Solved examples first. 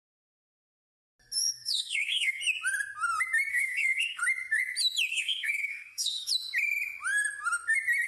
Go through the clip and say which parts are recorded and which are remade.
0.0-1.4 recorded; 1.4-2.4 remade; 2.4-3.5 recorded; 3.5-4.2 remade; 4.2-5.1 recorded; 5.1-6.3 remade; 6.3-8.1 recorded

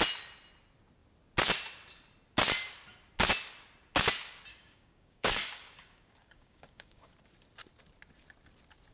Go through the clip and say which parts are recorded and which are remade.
0.0-4.5 recorded; 4.5-7.1 remade; 7.1-8.9 recorded

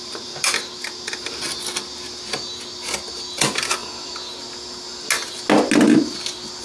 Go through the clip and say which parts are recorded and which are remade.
0.0-6.6 recorded

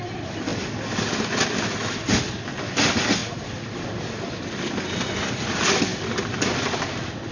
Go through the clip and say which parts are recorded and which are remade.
0.0-7.3 recorded